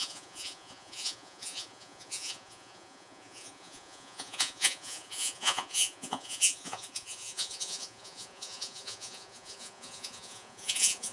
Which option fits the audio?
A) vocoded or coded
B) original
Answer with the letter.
A